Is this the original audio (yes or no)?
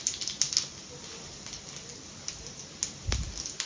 yes